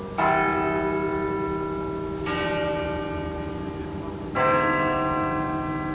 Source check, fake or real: real